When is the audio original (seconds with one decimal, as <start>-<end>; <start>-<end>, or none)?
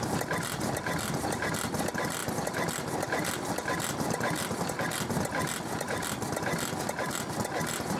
0.0-8.0